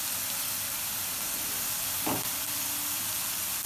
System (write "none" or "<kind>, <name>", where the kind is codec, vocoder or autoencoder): none